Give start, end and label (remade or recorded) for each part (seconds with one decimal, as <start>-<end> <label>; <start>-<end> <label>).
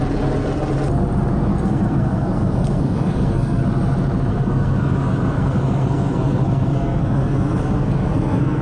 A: 0.0-1.5 recorded; 1.5-3.6 remade; 3.6-4.3 recorded; 4.3-8.6 remade